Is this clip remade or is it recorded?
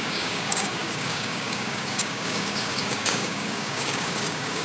remade